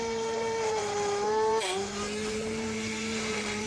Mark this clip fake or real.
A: fake